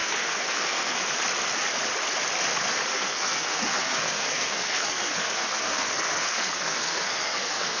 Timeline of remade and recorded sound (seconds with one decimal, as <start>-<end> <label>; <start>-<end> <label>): 0.0-1.0 remade; 1.0-2.9 recorded; 2.9-7.8 remade